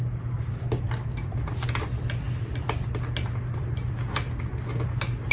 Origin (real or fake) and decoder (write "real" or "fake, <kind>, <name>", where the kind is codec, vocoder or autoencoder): real